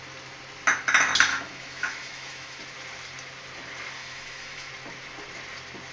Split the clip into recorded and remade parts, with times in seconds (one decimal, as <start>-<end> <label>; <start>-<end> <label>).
0.0-1.3 recorded; 1.3-2.6 remade; 2.6-4.0 recorded; 4.0-4.7 remade; 4.7-5.9 recorded